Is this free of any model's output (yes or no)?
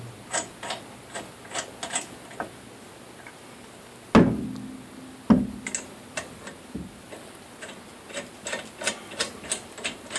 yes